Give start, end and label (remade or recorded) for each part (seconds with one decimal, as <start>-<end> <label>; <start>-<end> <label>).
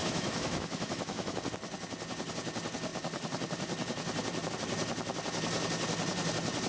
0.0-1.4 remade; 1.4-6.7 recorded